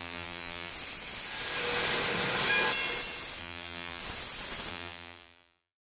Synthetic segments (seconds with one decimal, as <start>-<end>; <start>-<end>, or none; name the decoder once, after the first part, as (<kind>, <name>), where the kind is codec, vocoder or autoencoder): 0.0-0.7 (vocoder, BigVGAN v2); 3.4-4.0; 4.7-5.8